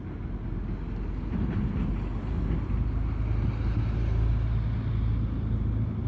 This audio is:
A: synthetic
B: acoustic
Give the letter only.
B